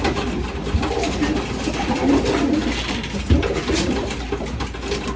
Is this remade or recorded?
recorded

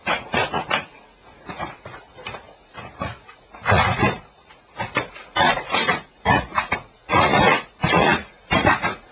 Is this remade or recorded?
remade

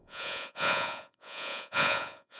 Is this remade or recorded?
remade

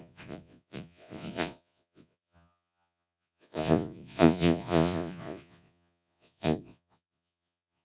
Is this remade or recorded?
remade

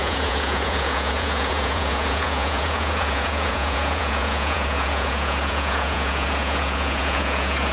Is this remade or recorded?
remade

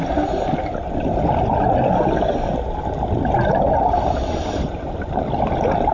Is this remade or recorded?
recorded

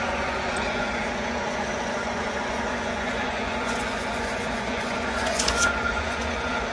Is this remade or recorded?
remade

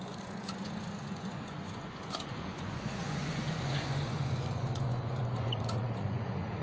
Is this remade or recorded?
remade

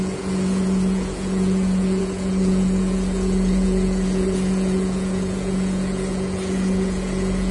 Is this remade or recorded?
remade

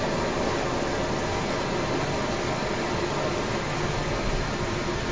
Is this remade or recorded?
recorded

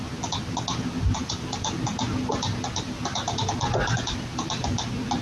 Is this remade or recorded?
recorded